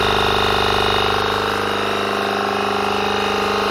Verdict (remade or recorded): recorded